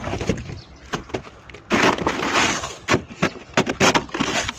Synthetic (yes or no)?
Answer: no